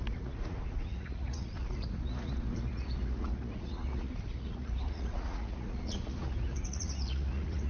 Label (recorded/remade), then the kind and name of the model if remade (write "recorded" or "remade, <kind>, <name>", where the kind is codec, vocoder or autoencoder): remade, vocoder, Vocos